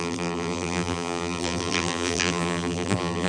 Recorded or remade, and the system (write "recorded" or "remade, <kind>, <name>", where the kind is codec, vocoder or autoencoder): remade, vocoder, BigVGAN v2